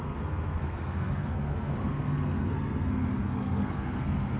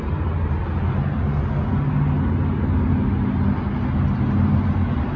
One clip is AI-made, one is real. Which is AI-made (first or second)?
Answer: first